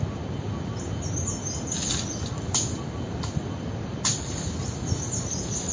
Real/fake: real